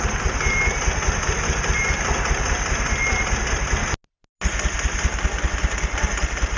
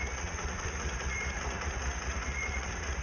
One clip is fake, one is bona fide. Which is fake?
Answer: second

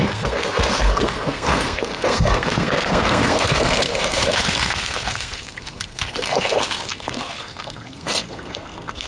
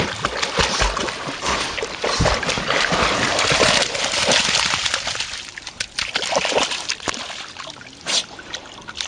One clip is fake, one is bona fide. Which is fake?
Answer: first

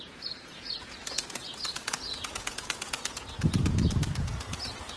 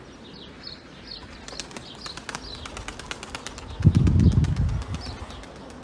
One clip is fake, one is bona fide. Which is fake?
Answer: first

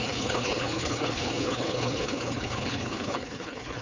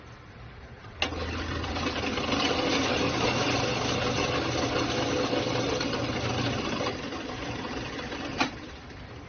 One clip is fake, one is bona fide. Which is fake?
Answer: first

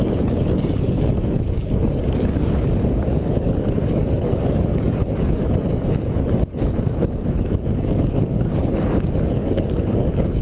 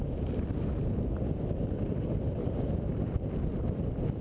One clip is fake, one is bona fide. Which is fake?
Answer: first